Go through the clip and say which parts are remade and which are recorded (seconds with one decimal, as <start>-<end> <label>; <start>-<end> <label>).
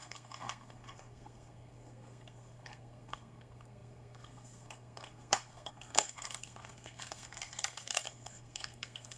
0.0-9.2 remade